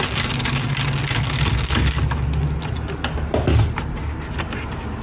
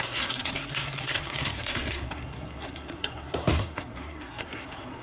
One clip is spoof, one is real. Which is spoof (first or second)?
second